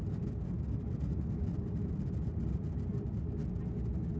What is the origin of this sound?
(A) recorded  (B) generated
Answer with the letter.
A